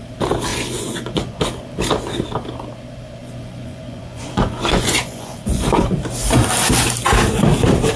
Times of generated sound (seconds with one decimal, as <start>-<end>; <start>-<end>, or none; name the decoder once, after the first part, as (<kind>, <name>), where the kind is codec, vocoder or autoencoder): 0.5-1.4 (vocoder, Vocos); 3.2-5.9